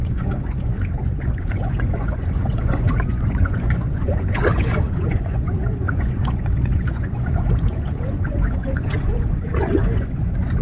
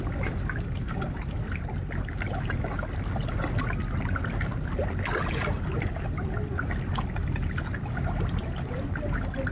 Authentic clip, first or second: second